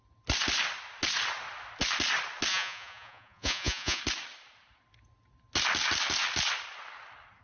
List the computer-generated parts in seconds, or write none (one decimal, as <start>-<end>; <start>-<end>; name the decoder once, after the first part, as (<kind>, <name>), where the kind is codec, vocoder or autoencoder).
2.5-4.0 (vocoder, Vocos)